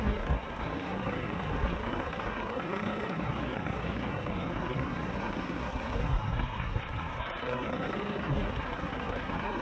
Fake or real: fake